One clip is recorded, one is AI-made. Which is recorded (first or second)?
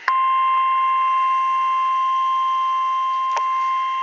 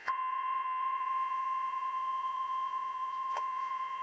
first